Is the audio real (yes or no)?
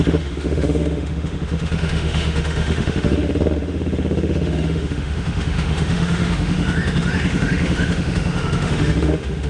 no